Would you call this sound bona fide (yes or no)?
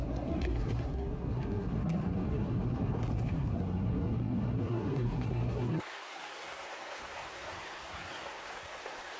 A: no